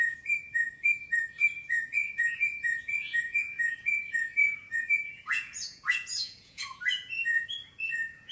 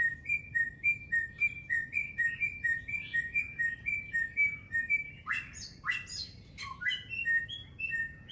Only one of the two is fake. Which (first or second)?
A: first